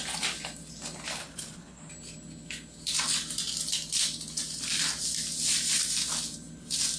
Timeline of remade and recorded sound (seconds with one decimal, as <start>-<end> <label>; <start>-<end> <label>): 0.0-1.2 recorded; 1.2-1.9 remade; 1.9-7.0 recorded